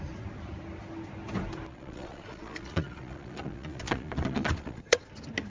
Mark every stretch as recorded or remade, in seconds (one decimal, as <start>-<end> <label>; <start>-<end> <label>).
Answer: 0.0-1.7 recorded; 1.7-5.0 remade; 5.0-5.5 recorded